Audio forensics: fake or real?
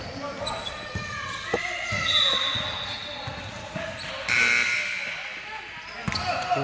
real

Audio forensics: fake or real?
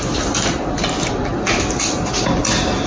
real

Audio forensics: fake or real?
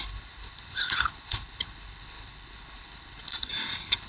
fake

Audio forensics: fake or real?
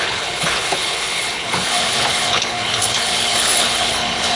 fake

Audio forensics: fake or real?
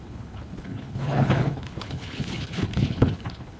fake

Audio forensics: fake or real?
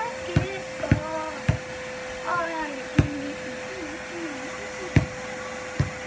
real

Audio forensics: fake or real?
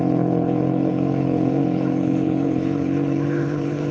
fake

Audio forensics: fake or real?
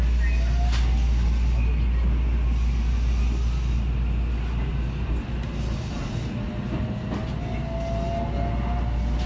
real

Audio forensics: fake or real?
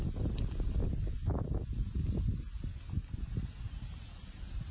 real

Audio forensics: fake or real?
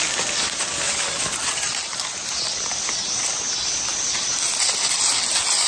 real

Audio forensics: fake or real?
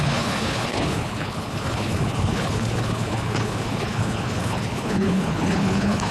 fake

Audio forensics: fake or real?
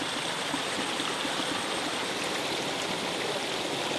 real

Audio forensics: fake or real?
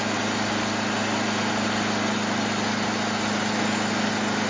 real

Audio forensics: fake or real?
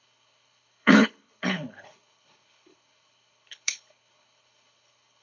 fake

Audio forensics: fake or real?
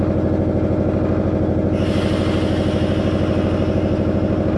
real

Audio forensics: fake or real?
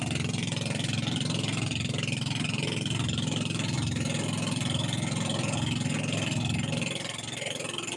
real